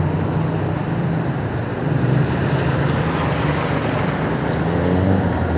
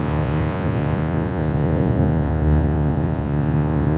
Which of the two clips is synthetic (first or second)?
second